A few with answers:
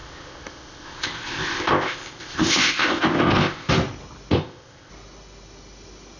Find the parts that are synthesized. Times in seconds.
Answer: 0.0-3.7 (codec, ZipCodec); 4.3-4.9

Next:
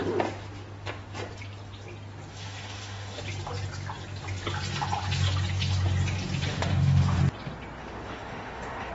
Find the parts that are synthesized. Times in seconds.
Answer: 2.3-3.2 (autoencoder, DAC-VAE); 6.5-7.2; 7.8-8.9

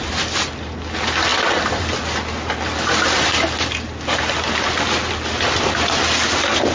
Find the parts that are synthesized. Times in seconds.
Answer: none

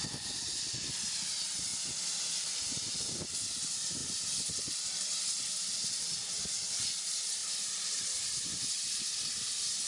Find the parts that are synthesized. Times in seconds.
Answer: 1.7-3.0 (vocoder, BigVGAN v2); 4.0-4.6; 7.4-8.1

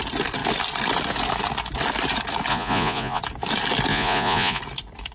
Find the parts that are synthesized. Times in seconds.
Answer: 2.5-3.2 (vocoder, Vocos); 3.9-4.6

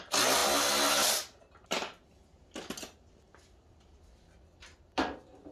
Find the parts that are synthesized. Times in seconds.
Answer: none

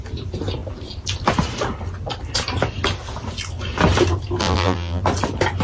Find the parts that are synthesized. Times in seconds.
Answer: 4.4-5.0 (vocoder, BigVGAN v2)